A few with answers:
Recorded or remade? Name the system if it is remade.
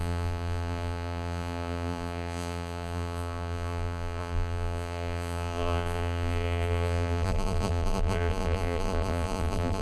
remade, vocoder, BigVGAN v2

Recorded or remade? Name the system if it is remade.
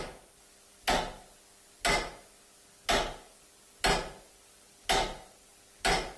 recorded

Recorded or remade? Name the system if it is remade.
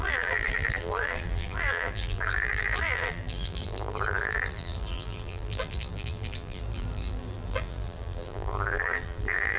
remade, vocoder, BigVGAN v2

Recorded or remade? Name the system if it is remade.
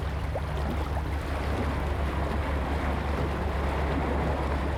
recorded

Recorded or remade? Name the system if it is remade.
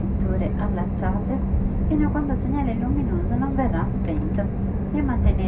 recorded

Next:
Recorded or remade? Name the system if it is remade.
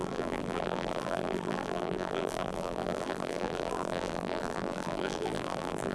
remade, vocoder, BigVGAN v2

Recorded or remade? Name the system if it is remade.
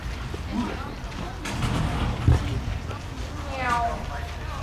recorded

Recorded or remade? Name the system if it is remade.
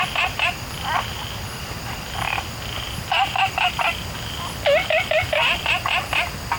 recorded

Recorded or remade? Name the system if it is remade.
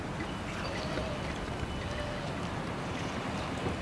recorded